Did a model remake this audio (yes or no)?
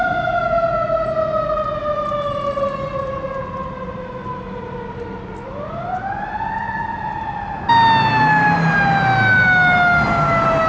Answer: no